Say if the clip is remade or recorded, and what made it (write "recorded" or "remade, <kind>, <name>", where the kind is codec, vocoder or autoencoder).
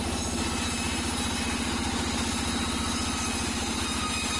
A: remade, vocoder, BigVGAN v2